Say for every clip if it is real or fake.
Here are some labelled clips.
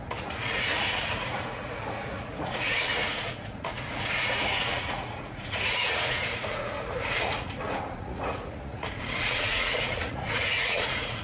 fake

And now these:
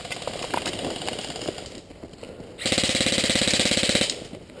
real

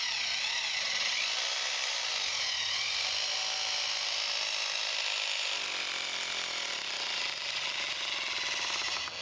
real